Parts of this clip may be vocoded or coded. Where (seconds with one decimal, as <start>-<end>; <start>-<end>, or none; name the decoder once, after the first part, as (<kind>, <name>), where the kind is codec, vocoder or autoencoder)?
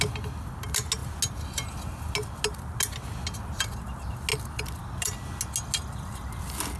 none